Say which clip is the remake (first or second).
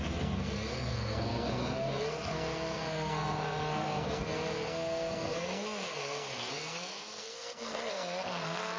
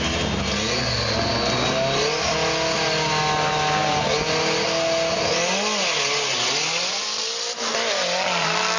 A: first